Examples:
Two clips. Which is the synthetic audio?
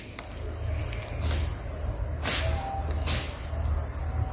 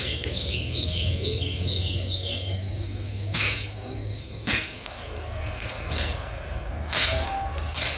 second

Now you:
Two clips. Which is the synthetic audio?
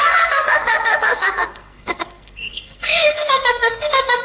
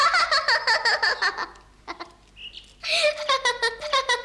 first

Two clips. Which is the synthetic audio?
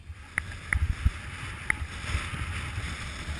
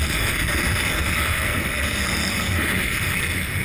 second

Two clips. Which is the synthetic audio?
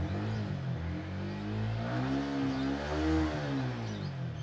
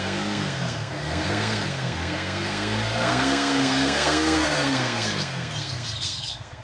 second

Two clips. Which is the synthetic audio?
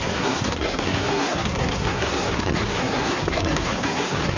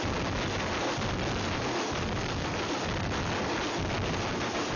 first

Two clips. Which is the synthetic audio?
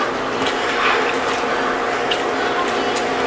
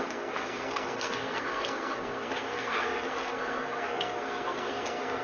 second